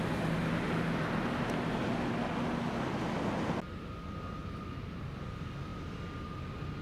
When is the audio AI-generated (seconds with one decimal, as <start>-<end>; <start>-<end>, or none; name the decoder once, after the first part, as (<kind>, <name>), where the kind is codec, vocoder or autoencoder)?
1.8-2.3 (vocoder, BigVGAN v2); 4.4-5.3